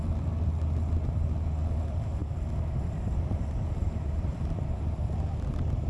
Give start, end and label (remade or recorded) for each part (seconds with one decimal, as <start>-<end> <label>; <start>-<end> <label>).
0.0-2.2 recorded; 2.2-3.4 remade; 3.4-4.3 recorded; 4.3-5.9 remade